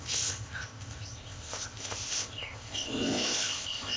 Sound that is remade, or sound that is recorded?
remade